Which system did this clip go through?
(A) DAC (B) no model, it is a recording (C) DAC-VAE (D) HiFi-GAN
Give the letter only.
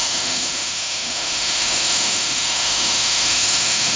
C